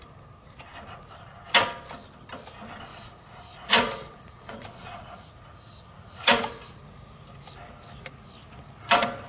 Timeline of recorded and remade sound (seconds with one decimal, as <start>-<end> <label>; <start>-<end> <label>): 0.0-2.9 recorded; 2.9-6.8 remade; 6.8-9.3 recorded